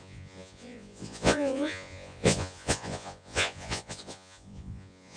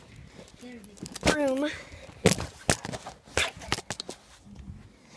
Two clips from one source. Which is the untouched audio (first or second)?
second